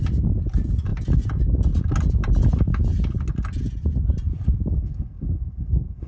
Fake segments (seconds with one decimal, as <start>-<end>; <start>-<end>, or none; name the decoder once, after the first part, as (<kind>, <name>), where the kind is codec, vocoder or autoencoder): 4.8-6.1 (codec, SNAC)